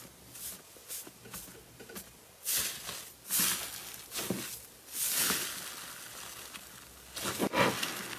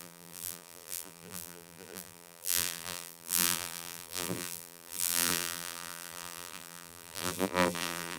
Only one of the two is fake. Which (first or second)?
second